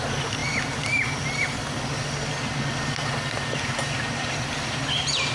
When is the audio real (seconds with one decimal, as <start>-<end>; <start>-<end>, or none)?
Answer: 0.0-5.3